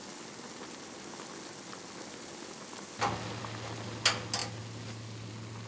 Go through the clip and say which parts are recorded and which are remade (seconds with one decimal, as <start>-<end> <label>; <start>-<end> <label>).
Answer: 0.0-5.7 recorded